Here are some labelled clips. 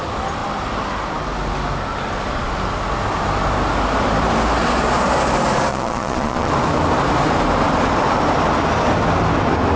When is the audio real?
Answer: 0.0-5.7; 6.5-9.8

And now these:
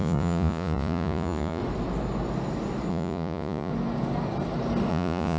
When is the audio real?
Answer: 1.6-2.9; 3.7-4.9

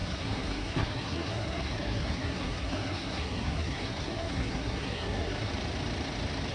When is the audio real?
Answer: 5.5-6.5

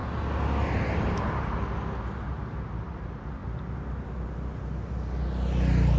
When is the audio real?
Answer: 0.0-6.0

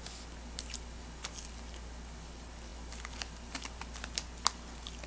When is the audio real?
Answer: 0.0-5.1

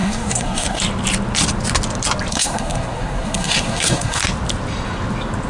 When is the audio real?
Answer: 0.8-2.3; 4.2-5.5

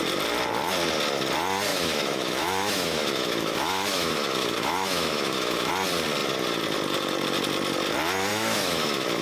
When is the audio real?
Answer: 0.0-1.7; 5.7-8.3

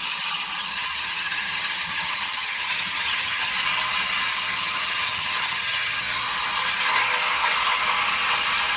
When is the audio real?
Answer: 0.0-0.6; 3.5-4.6; 6.0-8.8